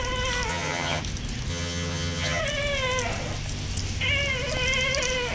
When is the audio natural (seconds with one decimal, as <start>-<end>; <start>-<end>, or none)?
0.0-0.5; 1.0-1.5; 2.4-5.3